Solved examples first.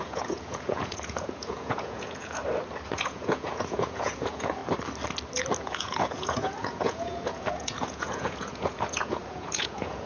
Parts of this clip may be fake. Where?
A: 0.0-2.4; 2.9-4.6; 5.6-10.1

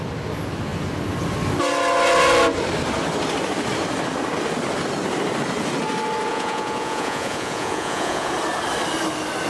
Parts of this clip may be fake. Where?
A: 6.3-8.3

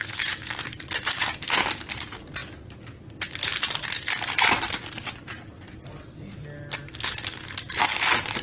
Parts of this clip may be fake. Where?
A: none

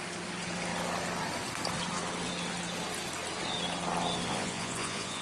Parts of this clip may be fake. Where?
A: 4.3-5.2

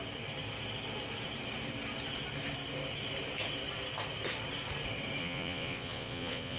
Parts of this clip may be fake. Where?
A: 5.2-6.6

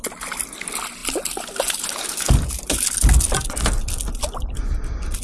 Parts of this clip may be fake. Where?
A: none